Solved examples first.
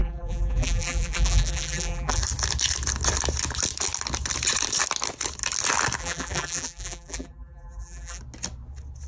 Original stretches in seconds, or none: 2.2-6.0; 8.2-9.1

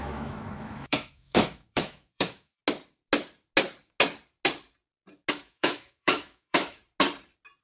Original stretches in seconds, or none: 2.6-5.3; 6.8-7.6

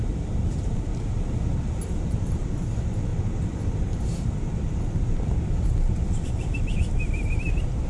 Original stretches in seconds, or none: 0.9-2.0; 3.1-6.2

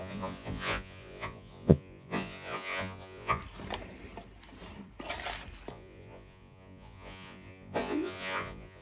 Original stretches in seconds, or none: 3.4-5.7

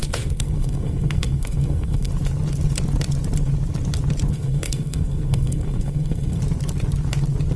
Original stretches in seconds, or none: 2.1-4.3; 6.4-7.6

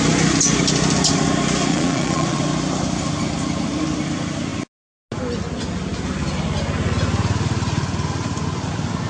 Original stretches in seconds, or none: 0.0-1.7; 2.4-9.1

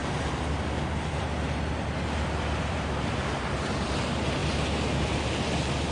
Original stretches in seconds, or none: 0.0-5.9